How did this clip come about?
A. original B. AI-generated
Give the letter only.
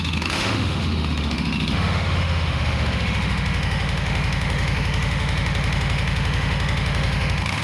B